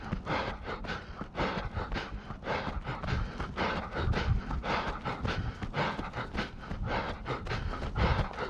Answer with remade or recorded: recorded